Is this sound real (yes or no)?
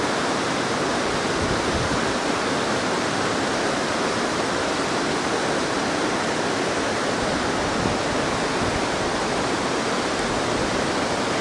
yes